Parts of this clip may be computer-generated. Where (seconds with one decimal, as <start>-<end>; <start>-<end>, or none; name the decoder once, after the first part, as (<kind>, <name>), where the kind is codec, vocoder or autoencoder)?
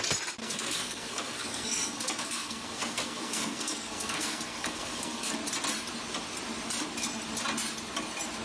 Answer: 0.4-5.3 (codec, SNAC)